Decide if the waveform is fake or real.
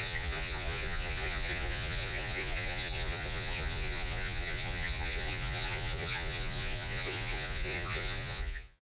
fake